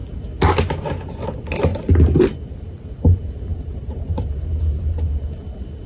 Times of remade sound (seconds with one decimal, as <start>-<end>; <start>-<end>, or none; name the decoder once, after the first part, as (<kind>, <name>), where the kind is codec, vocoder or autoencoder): 0.0-0.5 (vocoder, BigVGAN v2); 1.7-2.4; 3.5-5.1